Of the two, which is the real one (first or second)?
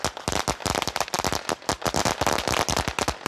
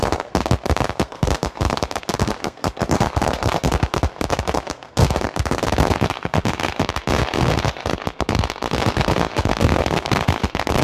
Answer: first